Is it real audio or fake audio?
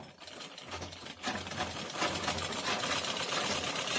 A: real